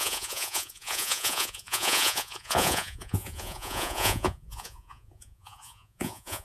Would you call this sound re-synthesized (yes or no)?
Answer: yes